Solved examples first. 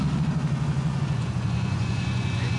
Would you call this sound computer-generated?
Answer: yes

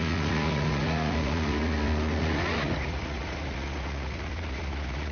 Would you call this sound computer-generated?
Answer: yes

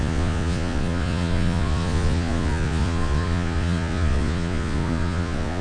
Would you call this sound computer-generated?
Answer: yes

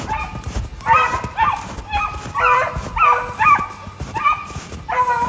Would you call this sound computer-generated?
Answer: no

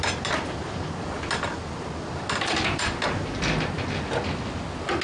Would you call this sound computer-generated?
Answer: no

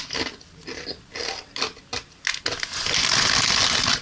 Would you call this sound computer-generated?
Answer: no